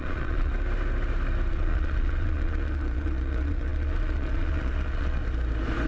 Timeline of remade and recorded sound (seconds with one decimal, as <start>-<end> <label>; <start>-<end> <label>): 0.0-0.5 remade; 0.5-1.5 recorded; 1.5-5.2 remade; 5.2-5.9 recorded